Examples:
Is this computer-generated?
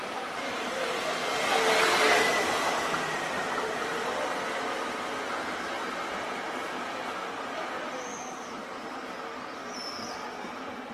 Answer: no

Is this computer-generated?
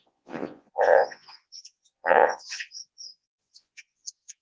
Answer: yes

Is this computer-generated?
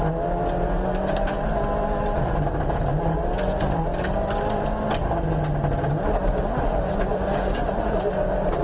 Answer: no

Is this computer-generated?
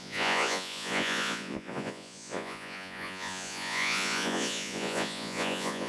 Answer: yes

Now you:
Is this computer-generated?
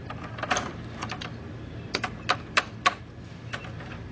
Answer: no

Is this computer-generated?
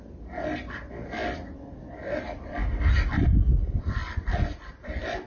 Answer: no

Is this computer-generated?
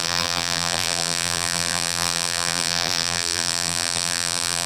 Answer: yes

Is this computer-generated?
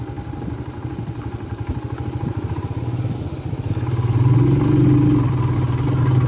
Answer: no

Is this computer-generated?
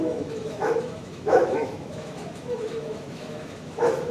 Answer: yes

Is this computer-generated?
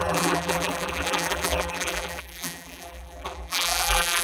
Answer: yes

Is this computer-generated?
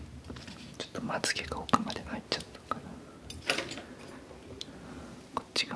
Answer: no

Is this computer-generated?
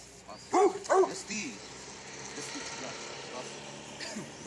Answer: yes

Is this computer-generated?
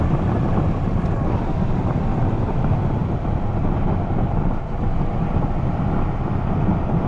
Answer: no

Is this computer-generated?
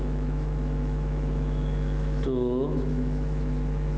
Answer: yes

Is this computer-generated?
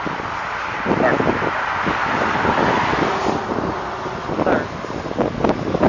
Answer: no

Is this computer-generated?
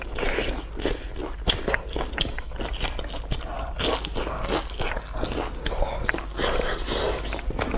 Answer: no